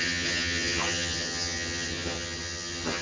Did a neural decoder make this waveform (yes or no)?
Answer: yes